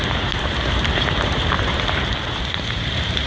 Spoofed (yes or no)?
yes